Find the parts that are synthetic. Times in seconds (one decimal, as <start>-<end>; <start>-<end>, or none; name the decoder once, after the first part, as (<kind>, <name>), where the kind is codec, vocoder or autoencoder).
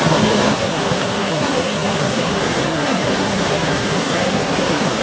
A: 0.0-5.0 (codec, SNAC)